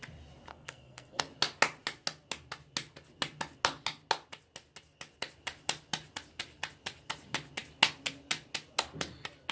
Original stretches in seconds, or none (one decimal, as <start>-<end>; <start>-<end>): 0.0-0.5; 1.2-9.5